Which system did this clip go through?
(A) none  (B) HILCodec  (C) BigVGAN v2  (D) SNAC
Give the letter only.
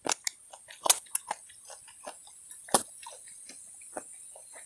A